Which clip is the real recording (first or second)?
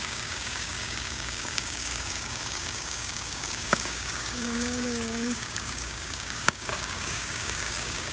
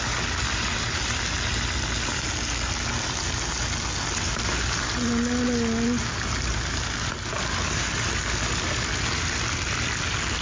second